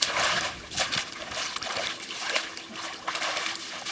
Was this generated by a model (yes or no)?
no